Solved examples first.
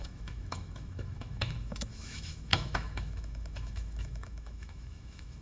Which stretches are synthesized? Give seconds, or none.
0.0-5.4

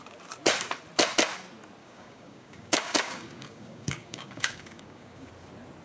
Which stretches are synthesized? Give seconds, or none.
1.8-5.3

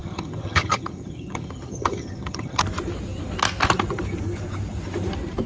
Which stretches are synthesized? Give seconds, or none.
0.0-2.6

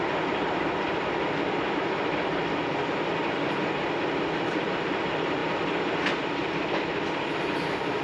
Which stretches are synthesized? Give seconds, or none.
0.0-2.4; 4.3-8.0

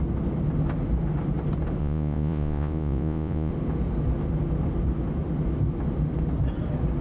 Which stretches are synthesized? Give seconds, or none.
1.8-3.5

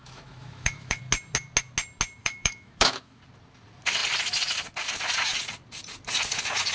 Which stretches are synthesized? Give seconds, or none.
0.0-1.0; 2.2-3.2

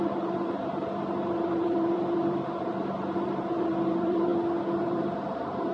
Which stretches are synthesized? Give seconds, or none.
0.0-4.3; 4.8-5.7